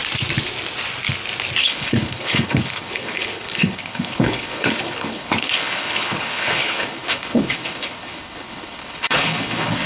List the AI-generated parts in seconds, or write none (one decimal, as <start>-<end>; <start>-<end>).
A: 1.6-9.9